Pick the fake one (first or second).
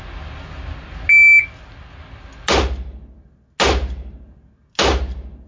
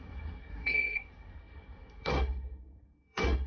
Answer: second